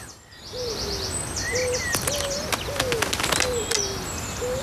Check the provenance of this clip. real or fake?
real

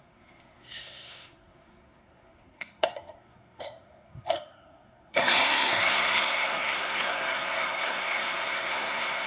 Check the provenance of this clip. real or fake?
fake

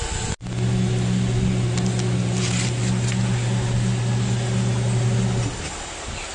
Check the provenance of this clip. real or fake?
real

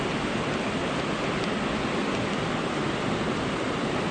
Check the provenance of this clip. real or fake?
real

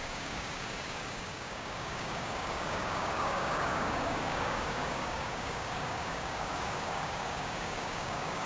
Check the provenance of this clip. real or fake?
fake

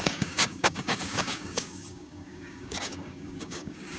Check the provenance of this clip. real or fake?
fake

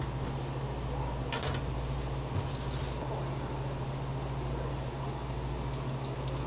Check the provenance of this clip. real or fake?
real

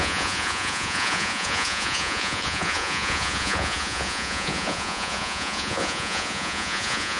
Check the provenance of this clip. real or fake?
fake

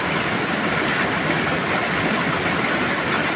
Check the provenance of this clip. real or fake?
real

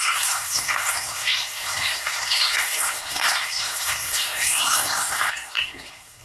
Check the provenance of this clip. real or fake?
fake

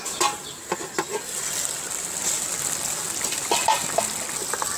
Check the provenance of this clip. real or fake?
real